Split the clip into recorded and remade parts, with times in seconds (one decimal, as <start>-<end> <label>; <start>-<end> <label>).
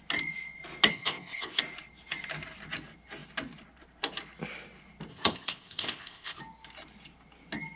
0.0-0.9 recorded; 0.9-1.6 remade; 1.6-5.1 recorded; 5.1-6.4 remade; 6.4-7.8 recorded